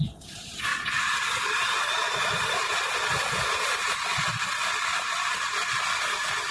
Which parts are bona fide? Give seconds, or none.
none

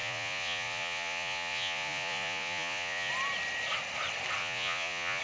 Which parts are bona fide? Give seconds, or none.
3.1-4.4

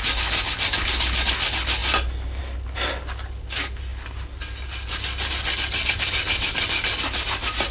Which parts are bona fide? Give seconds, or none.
0.0-7.7